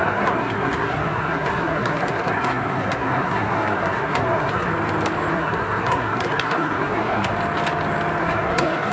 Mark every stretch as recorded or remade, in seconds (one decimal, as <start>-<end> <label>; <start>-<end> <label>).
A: 0.0-4.7 remade; 4.7-5.3 recorded; 5.3-7.3 remade; 7.3-8.2 recorded; 8.2-8.9 remade